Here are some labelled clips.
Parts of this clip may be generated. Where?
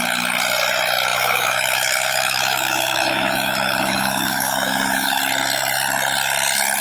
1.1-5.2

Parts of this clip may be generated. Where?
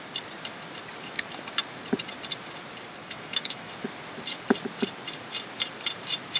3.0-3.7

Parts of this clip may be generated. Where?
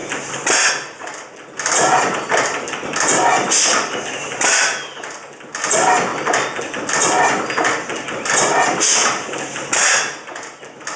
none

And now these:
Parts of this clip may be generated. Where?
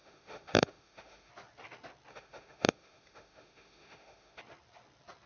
0.0-1.3; 2.1-4.4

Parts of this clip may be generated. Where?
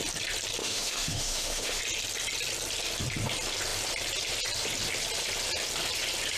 0.6-1.8